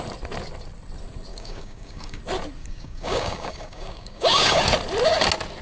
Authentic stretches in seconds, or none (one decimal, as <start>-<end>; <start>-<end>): 0.0-1.3; 2.2-2.6; 4.6-5.6